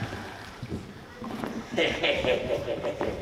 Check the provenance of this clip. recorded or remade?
remade